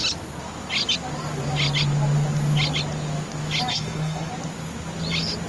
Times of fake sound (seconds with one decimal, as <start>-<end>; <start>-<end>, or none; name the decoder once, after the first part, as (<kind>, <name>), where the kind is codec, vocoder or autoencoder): 3.7-4.3 (codec, SNAC)